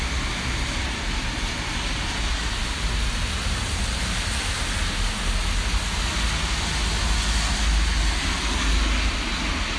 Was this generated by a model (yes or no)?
no